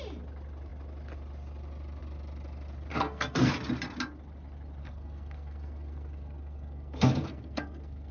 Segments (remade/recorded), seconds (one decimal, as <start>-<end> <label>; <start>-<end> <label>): 0.0-2.9 recorded; 2.9-3.5 remade; 3.5-4.8 recorded; 4.8-8.1 remade